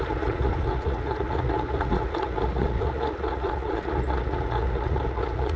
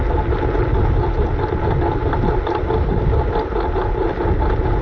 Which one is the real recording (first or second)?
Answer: second